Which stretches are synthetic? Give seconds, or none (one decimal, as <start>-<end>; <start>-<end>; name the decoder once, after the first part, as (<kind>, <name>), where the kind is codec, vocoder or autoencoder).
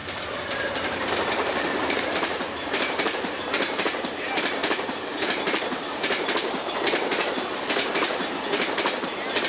0.0-9.5 (vocoder, BigVGAN v2)